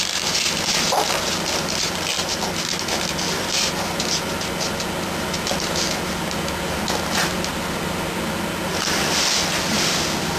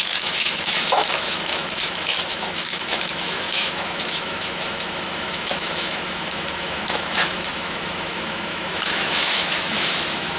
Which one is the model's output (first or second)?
second